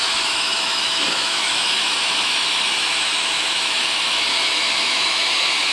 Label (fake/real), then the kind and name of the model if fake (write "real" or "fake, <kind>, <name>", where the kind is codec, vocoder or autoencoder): fake, autoencoder, DAC-VAE